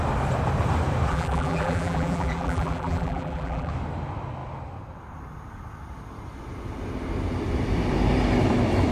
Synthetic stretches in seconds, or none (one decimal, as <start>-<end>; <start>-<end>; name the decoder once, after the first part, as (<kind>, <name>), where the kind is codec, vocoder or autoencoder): 1.1-3.7 (vocoder, BigVGAN v2)